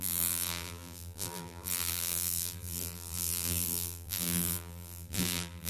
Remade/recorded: remade